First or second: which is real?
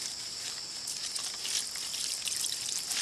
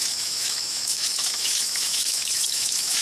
first